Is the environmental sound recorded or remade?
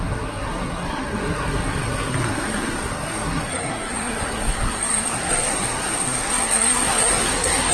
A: remade